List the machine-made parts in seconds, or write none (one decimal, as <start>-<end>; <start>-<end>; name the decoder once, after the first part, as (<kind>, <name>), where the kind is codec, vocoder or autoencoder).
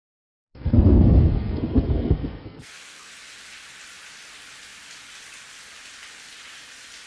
0.4-3.1 (codec, SNAC)